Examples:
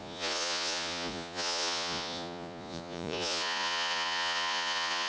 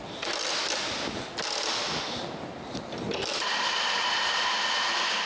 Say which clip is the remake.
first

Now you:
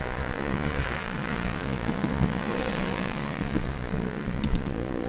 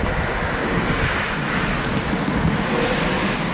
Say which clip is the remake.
first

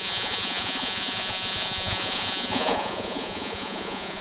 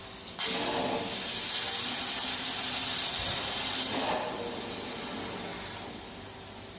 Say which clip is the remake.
first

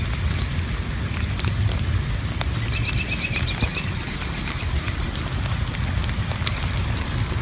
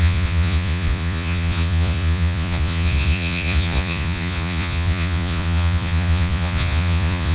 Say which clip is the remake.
second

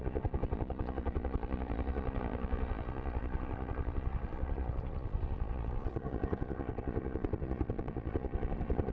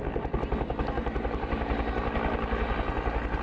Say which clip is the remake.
first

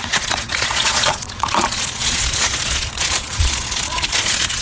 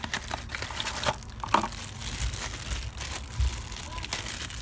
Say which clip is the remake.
first